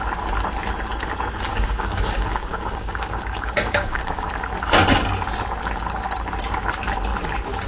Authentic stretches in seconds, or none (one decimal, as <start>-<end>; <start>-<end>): 0.0-1.5; 4.3-7.7